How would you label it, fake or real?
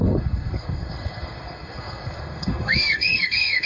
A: fake